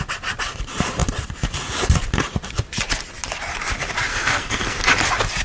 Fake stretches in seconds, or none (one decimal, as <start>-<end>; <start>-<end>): 4.1-4.9

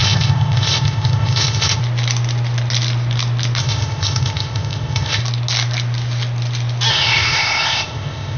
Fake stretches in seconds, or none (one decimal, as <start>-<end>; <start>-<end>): 0.0-1.8; 3.6-5.2; 6.9-8.4

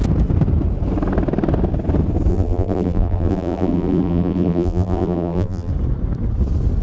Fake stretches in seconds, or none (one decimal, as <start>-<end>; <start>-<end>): 2.3-5.7

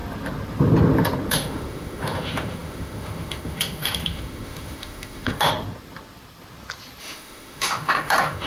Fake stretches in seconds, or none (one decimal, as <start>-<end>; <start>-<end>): 1.3-5.5; 7.0-8.5

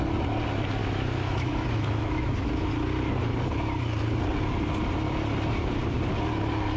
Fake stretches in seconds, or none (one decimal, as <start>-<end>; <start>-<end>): 0.8-2.7

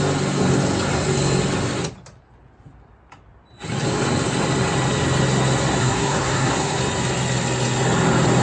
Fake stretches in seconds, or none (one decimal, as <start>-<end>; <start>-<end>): 5.8-6.8